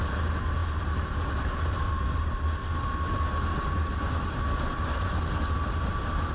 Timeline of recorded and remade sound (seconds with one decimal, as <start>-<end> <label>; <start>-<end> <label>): 0.0-6.3 recorded